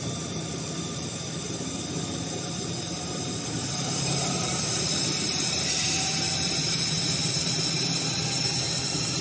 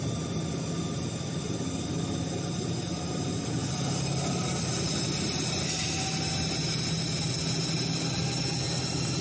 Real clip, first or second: second